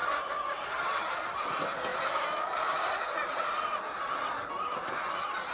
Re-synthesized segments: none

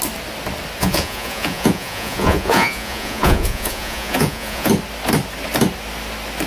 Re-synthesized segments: 0.8-4.7 (vocoder, Vocos)

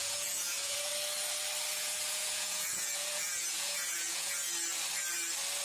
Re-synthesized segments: 0.0-0.9 (vocoder, Vocos); 1.7-4.4

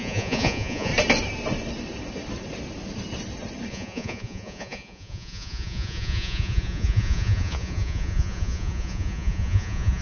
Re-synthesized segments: 0.0-0.9 (vocoder, Vocos); 3.7-10.0

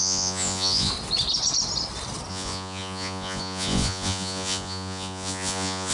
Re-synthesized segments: 0.0-0.9 (vocoder, Vocos); 2.3-5.9

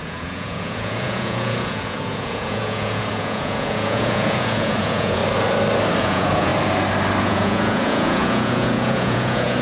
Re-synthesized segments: 0.0-5.2 (vocoder, Vocos); 6.0-6.5; 7.2-9.6

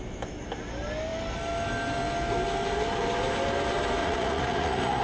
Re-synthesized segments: 4.0-5.0 (vocoder, Vocos)

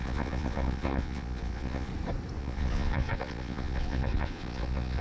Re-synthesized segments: 0.0-1.9 (vocoder, Vocos); 2.4-5.0